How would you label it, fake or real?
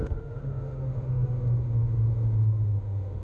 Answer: fake